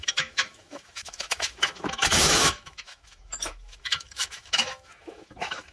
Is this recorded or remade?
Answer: remade